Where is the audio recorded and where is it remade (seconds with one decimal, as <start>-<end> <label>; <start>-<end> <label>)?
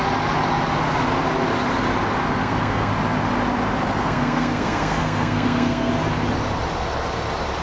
0.0-2.4 recorded; 2.4-2.9 remade; 2.9-4.0 recorded; 4.0-5.9 remade; 5.9-7.6 recorded